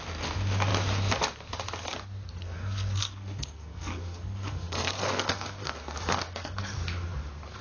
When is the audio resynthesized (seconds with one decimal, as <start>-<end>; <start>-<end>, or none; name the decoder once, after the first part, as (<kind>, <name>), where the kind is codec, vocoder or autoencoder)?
2.4-6.6 (codec, SNAC)